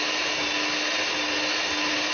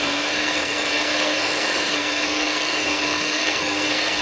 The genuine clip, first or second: first